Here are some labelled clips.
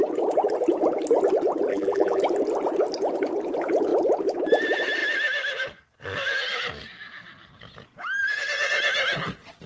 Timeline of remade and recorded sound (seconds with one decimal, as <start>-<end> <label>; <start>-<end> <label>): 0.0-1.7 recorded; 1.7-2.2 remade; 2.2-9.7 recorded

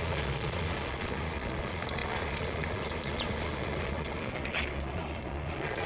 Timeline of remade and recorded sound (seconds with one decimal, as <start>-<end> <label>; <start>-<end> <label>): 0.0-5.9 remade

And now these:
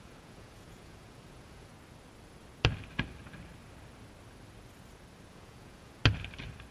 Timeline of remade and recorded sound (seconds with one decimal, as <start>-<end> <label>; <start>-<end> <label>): 0.0-1.7 remade; 1.7-5.3 recorded; 5.3-6.0 remade; 6.0-6.7 recorded

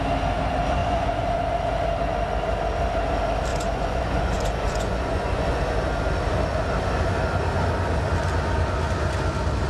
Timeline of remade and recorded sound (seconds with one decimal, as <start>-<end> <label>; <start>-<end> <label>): 0.0-0.8 recorded; 0.8-1.4 remade; 1.4-3.5 recorded; 3.5-5.6 remade; 5.6-9.7 recorded

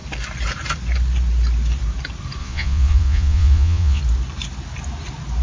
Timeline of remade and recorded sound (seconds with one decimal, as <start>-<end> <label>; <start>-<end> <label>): 0.0-2.4 recorded; 2.4-4.0 remade; 4.0-5.4 recorded

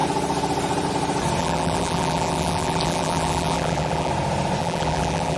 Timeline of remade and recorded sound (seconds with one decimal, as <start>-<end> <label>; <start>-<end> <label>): 0.0-1.4 recorded; 1.4-4.1 remade; 4.1-4.6 recorded; 4.6-5.4 remade

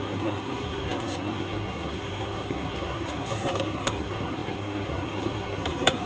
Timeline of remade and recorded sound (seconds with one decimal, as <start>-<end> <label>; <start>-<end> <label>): 0.0-6.1 remade

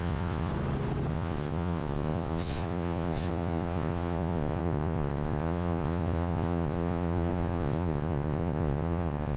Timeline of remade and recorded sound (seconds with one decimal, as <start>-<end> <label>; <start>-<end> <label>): 0.0-0.5 remade; 0.5-1.1 recorded; 1.1-9.4 remade